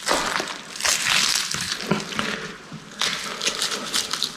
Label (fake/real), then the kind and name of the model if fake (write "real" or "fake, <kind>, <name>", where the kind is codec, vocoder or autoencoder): real